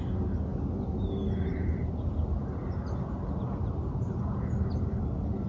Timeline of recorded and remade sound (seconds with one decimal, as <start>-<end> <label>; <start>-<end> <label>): 0.0-5.5 recorded